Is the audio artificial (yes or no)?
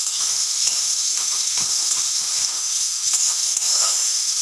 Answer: yes